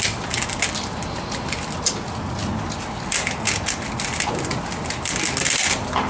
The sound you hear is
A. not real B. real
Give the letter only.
B